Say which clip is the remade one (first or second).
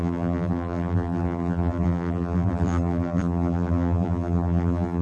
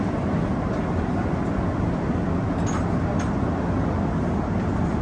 first